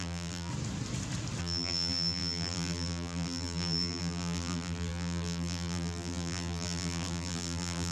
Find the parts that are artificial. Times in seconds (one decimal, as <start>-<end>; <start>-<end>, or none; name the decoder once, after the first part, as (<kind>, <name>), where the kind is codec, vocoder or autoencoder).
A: 0.0-0.5 (vocoder, BigVGAN v2); 1.4-7.9